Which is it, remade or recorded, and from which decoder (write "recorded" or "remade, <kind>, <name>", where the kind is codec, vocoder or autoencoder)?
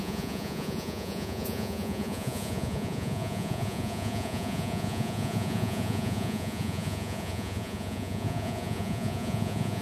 remade, vocoder, Vocos